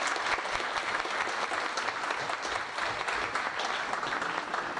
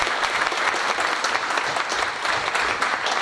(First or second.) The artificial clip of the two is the second